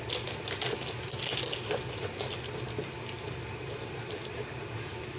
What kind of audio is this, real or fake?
real